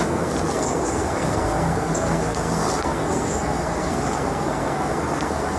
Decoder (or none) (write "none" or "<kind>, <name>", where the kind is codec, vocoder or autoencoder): codec, SNAC